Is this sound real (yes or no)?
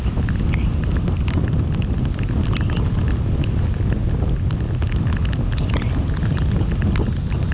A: yes